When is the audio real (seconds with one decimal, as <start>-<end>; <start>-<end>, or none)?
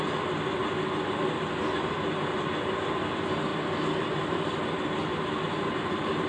0.0-3.5